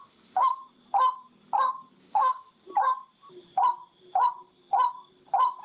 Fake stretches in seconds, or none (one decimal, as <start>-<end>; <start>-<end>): 0.0-0.6; 2.0-2.5